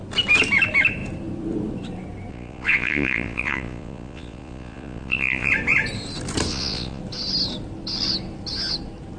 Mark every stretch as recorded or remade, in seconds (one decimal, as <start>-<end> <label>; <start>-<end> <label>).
0.0-2.3 recorded; 2.3-5.5 remade; 5.5-6.5 recorded; 6.5-7.0 remade; 7.0-9.2 recorded